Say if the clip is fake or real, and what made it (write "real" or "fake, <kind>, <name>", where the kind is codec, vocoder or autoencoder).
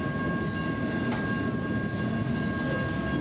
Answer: real